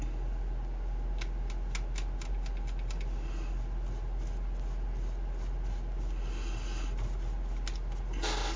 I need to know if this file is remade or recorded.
recorded